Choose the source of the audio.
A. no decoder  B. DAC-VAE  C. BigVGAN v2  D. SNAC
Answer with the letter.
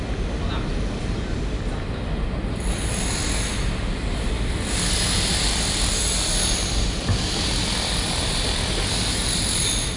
A